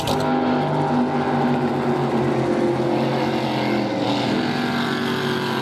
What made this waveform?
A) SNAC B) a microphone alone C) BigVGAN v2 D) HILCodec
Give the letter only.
B